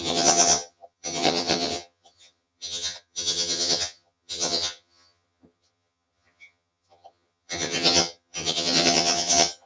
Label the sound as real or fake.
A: fake